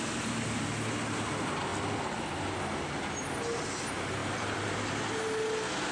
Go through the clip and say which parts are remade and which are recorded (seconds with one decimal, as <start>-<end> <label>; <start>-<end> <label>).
0.0-4.2 recorded; 4.2-5.1 remade; 5.1-5.9 recorded